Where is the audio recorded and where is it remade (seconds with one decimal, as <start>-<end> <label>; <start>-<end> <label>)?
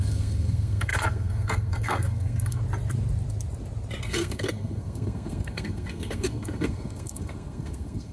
0.0-2.6 remade; 2.6-4.0 recorded; 4.0-8.1 remade